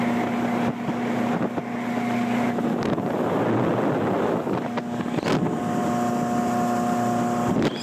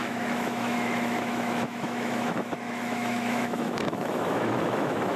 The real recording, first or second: first